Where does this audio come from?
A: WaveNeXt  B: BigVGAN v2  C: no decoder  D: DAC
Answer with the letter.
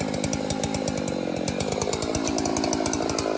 C